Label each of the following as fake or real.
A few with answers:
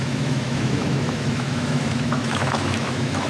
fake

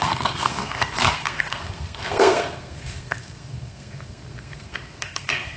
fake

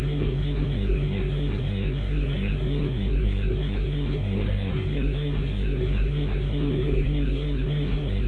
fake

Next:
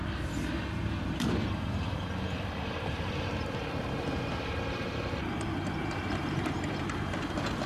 fake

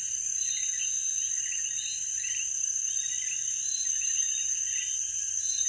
real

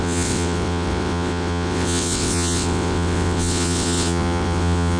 fake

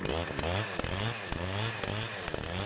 real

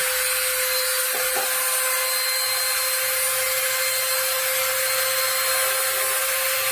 real